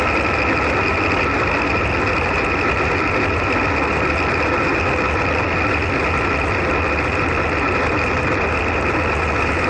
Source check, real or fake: real